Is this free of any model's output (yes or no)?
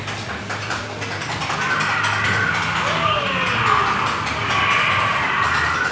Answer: yes